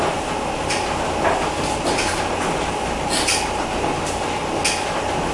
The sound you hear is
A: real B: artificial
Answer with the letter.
A